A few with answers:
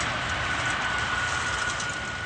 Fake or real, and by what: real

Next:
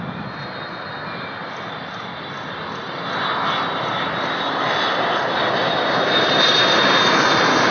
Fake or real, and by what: real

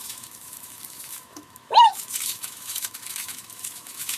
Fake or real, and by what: fake, autoencoder, DAC-VAE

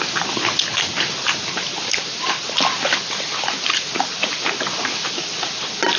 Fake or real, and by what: real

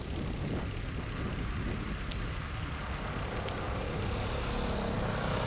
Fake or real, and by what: real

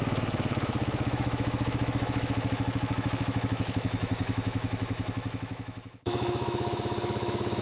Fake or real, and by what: fake, autoencoder, DAC-VAE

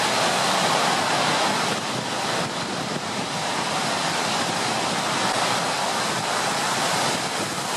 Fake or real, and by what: fake, vocoder, BigVGAN v2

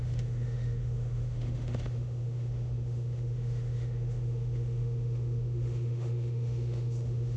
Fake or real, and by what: fake, autoencoder, DAC-VAE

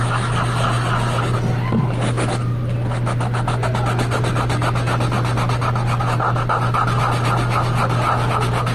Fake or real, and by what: real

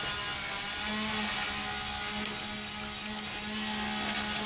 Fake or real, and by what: real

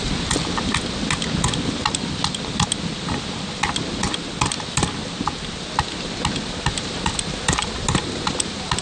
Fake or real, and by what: real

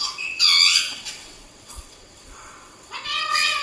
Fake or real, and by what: fake, vocoder, WaveNeXt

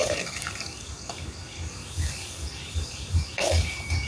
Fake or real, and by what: fake, codec, DAC